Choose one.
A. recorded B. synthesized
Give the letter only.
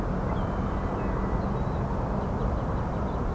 A